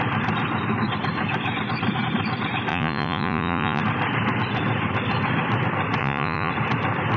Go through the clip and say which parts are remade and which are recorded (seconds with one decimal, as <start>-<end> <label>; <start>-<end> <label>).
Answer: 0.0-2.7 recorded; 2.7-3.8 remade; 3.8-6.0 recorded; 6.0-6.5 remade; 6.5-7.2 recorded